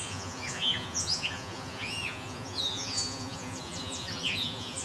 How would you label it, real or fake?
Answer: fake